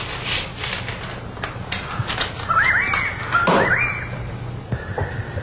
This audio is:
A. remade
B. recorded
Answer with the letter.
B